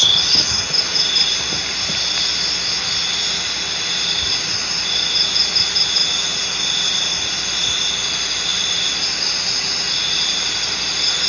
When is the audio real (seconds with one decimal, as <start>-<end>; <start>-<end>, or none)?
0.0-11.3